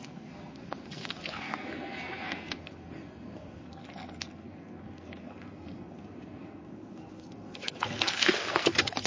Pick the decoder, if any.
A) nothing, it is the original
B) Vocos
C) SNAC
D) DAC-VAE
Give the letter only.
C